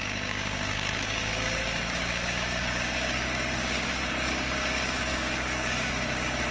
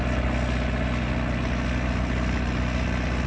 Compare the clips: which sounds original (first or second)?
second